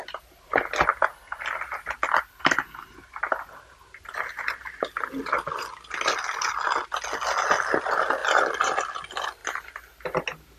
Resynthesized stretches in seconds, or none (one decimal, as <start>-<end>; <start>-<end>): 8.2-8.8; 9.4-10.2